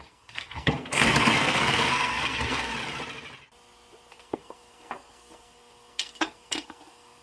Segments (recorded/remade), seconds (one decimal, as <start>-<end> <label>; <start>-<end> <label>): 0.0-2.7 remade; 2.7-4.1 recorded; 4.1-7.2 remade